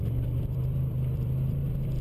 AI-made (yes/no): yes